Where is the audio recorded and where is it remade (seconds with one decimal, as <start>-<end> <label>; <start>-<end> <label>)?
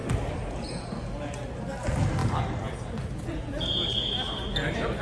0.0-5.0 recorded